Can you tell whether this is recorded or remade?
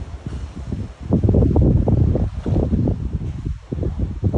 recorded